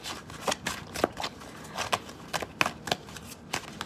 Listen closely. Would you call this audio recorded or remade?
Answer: recorded